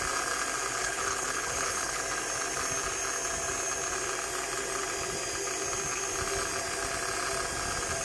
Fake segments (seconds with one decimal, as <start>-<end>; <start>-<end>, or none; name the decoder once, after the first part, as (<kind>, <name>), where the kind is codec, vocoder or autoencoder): 0.8-2.0 (codec, HILCodec)